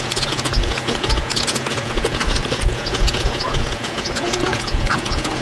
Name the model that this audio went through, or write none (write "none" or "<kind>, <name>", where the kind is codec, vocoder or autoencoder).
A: vocoder, Vocos